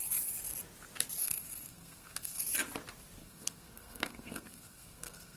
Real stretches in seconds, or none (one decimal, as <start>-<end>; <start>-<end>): 0.0-1.2; 2.4-3.2